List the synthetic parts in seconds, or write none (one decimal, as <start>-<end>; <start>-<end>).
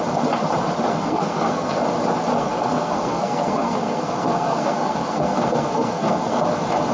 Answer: 0.9-1.8; 2.3-6.4